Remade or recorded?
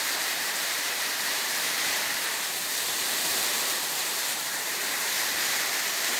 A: remade